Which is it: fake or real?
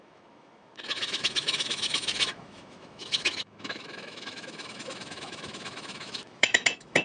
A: fake